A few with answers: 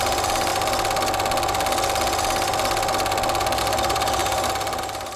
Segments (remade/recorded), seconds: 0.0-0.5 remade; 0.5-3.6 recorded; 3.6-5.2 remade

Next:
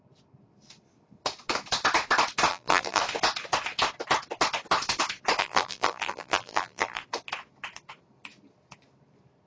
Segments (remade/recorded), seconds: 0.0-2.5 recorded; 2.5-3.0 remade; 3.0-5.4 recorded; 5.4-7.0 remade; 7.0-9.5 recorded

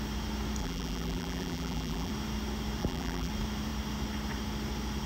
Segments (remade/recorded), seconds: 0.0-0.6 recorded; 0.6-2.1 remade; 2.1-2.8 recorded; 2.8-3.3 remade; 3.3-5.1 recorded

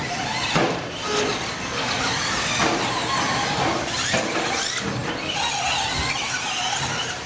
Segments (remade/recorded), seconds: 0.0-7.3 recorded

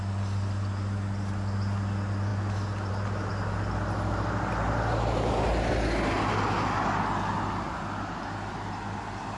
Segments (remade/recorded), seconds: 0.0-9.4 recorded